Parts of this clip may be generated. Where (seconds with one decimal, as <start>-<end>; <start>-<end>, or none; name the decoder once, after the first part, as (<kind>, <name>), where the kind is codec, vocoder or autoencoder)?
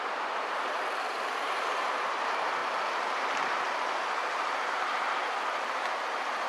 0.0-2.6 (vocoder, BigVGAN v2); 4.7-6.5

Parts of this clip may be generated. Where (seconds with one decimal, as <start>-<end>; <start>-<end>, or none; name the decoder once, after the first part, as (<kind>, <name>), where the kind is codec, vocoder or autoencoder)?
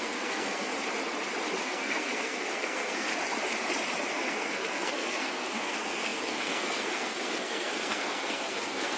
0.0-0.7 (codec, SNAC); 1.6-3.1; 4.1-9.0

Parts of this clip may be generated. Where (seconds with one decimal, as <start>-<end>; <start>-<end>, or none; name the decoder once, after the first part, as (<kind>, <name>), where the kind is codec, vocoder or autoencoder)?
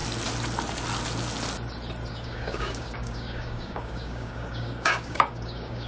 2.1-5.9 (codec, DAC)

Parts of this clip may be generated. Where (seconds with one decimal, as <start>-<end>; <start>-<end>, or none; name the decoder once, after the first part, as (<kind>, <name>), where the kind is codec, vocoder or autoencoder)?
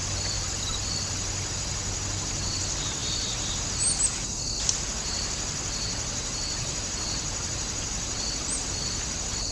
none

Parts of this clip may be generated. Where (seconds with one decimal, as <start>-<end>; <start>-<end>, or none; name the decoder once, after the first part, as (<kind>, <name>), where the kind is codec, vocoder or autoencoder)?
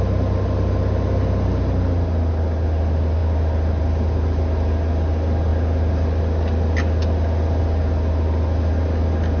none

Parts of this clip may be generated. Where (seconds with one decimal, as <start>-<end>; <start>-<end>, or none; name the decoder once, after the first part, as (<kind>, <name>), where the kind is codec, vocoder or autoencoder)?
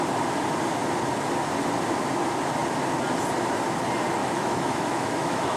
4.2-5.6 (autoencoder, DAC-VAE)